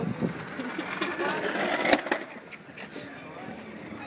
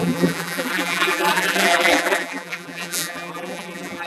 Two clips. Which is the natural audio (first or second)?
first